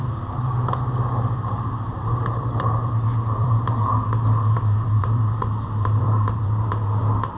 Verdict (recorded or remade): remade